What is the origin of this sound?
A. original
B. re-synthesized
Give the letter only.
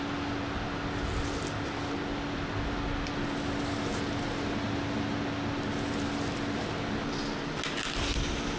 A